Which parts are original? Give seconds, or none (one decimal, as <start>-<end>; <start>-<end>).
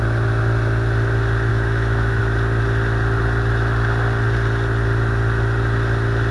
0.0-1.5; 2.2-6.3